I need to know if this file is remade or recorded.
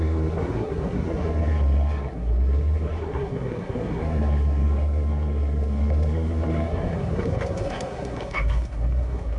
remade